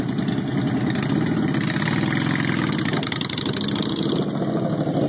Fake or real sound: real